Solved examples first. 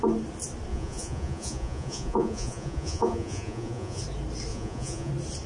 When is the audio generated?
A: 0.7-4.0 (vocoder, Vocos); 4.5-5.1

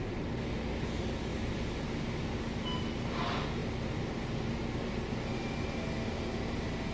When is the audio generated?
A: none